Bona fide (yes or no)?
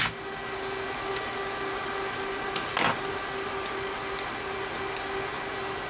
yes